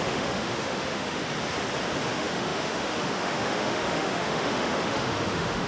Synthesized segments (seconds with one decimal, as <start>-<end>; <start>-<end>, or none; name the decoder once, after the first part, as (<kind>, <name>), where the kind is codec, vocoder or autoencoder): 0.0-1.2 (autoencoder, DAC-VAE); 2.1-5.7